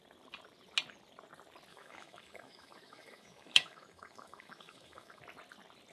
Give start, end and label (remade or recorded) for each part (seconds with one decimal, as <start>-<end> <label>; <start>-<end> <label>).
0.0-1.7 recorded; 1.7-5.2 remade; 5.2-5.9 recorded